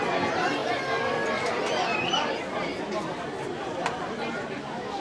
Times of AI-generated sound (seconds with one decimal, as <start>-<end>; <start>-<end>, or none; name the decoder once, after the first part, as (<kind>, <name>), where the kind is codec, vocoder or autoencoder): 0.6-1.6 (vocoder, BigVGAN v2)